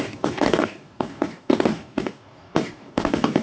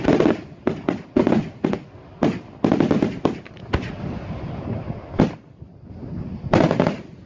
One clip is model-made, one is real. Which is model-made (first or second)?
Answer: first